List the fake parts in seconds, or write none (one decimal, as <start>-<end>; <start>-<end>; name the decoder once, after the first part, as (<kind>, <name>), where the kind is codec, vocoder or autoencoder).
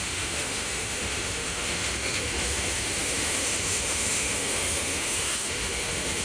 0.0-6.2 (autoencoder, DAC-VAE)